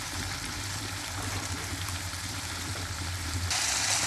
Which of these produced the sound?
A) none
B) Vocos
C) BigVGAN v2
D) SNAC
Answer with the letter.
C